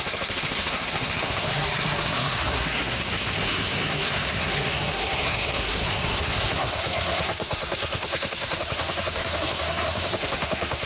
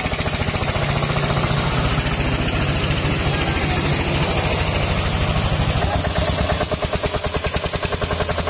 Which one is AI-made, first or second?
first